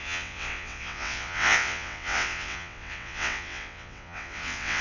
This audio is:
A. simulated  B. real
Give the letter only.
A